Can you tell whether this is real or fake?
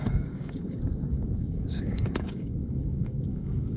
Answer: fake